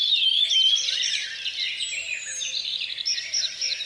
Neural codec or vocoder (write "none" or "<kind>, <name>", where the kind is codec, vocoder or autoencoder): none